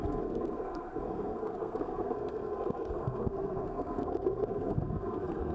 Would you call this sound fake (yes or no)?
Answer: yes